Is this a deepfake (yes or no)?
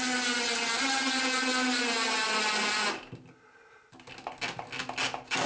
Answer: no